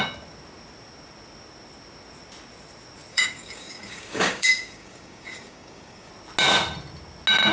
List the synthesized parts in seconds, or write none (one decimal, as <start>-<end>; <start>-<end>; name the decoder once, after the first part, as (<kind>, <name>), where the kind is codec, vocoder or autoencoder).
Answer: 3.1-6.1 (codec, DAC)